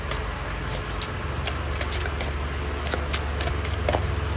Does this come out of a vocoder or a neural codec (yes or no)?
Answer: no